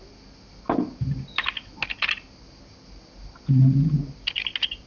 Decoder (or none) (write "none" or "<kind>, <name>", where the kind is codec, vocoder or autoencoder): none